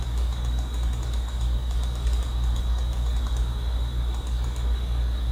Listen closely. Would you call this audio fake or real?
fake